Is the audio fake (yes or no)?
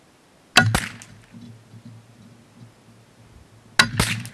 no